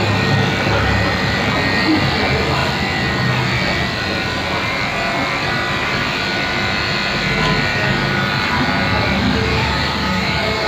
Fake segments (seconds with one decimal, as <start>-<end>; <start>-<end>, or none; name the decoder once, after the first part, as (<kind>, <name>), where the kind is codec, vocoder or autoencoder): 7.7-8.2 (codec, DAC); 9.5-10.7